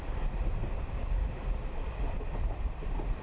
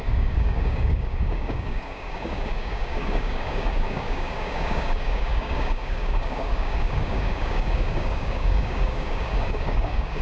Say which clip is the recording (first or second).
first